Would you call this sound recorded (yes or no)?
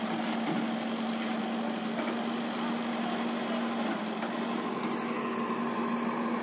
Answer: yes